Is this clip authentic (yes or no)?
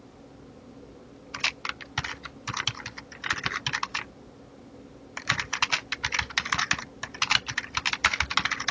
yes